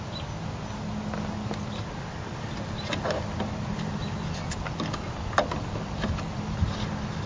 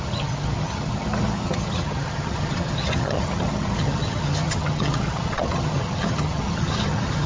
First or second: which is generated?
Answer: second